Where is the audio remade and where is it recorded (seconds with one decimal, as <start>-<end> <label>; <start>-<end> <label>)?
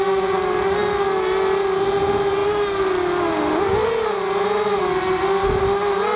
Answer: 0.0-6.2 recorded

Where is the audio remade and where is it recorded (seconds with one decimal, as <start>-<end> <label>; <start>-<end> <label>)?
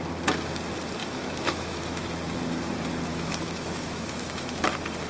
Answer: 0.0-1.0 recorded; 1.0-2.0 remade; 2.0-3.1 recorded; 3.1-4.6 remade; 4.6-5.1 recorded